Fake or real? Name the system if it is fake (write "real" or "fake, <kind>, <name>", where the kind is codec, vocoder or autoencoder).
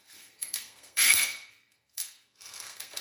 fake, codec, SNAC